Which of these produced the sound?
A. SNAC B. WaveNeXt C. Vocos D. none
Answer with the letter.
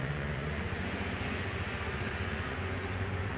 C